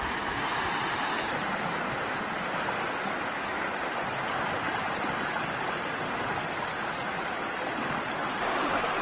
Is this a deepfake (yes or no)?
no